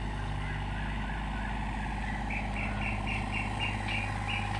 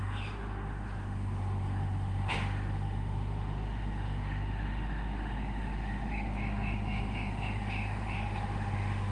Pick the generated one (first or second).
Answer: second